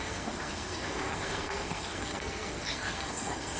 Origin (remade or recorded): remade